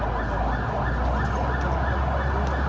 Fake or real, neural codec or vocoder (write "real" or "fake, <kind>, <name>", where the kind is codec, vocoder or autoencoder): real